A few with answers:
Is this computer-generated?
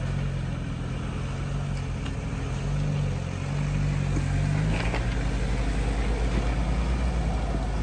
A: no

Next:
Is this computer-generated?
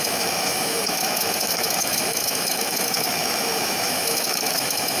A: yes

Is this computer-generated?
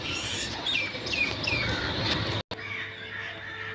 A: no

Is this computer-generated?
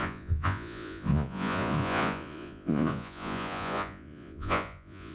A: yes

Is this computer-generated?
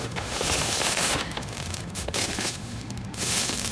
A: yes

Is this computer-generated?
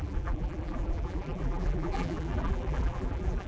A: yes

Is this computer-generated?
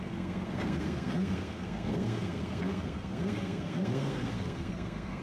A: yes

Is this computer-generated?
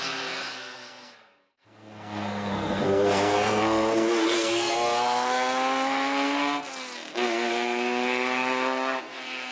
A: yes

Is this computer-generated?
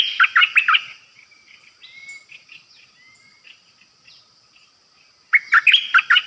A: no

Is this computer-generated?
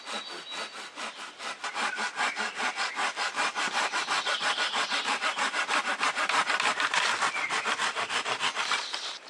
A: no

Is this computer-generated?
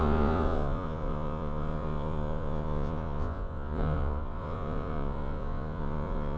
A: yes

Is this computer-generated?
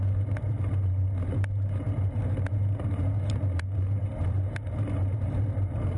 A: yes